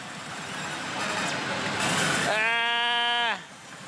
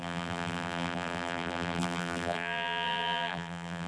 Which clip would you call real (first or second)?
first